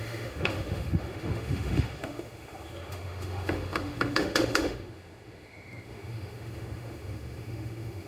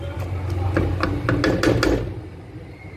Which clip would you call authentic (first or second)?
second